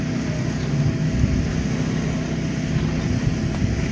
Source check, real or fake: real